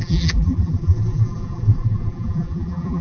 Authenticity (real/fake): fake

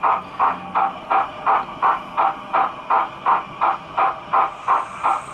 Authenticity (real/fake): real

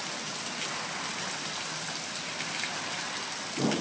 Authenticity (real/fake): real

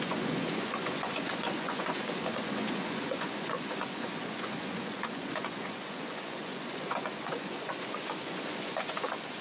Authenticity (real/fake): fake